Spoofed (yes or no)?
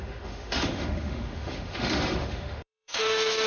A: yes